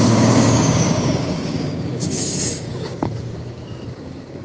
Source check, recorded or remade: remade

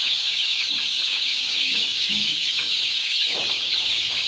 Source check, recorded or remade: remade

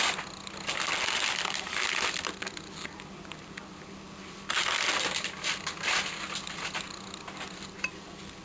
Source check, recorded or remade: recorded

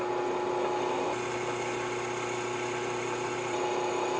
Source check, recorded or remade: recorded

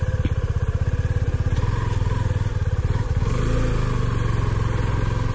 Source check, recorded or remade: recorded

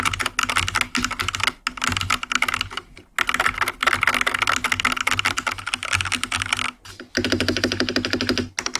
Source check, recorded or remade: recorded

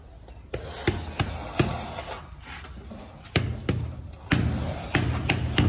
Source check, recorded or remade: recorded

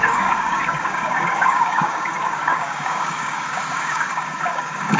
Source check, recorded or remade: remade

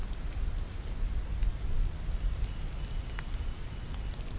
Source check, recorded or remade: recorded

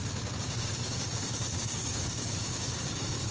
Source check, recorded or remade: remade